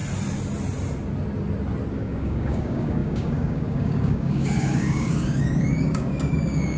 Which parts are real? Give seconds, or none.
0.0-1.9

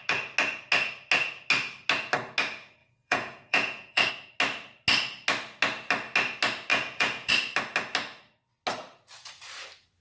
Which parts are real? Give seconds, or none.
0.0-2.8; 4.1-6.7; 7.3-10.0